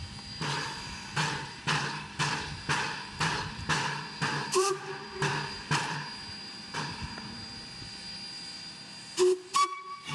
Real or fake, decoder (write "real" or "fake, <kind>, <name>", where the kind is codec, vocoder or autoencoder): fake, vocoder, BigVGAN v2